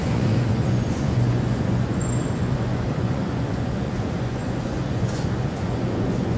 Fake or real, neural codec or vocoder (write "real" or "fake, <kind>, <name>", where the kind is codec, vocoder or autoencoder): fake, vocoder, Vocos